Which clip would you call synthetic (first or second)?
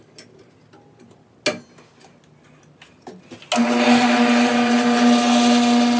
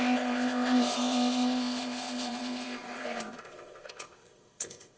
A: second